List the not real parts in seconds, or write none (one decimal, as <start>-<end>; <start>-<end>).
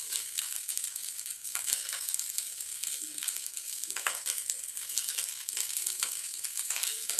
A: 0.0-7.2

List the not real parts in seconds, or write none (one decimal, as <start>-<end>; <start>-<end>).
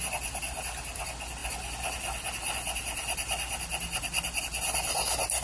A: none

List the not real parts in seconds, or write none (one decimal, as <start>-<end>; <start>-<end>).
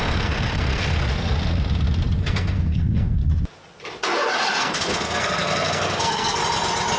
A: 0.0-1.1; 2.2-3.2; 4.6-6.4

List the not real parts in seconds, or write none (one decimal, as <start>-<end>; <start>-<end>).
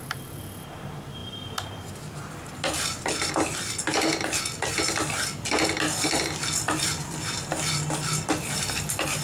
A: none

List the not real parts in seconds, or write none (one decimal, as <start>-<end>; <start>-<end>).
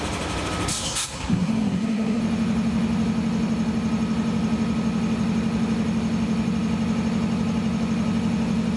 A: 0.7-2.2